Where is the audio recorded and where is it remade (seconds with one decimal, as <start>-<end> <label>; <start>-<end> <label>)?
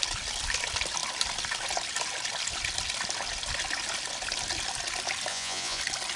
0.0-5.3 recorded; 5.3-5.8 remade; 5.8-6.2 recorded